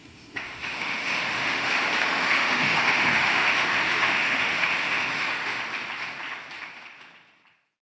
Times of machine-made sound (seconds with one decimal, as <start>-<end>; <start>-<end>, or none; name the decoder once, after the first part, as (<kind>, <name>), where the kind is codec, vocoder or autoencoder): 0.0-1.7 (autoencoder, DAC-VAE); 2.1-5.6